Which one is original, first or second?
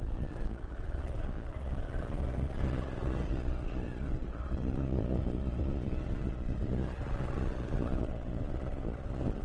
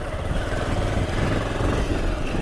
second